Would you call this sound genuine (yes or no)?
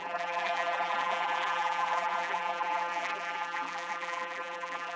no